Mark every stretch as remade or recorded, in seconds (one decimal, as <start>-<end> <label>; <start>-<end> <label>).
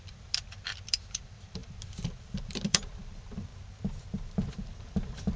0.0-3.5 remade; 3.5-4.5 recorded; 4.5-5.4 remade